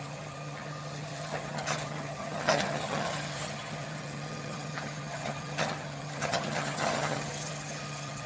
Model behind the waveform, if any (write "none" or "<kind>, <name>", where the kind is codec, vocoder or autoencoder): vocoder, HiFi-GAN